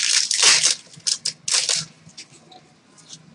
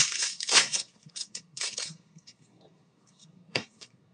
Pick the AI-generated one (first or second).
second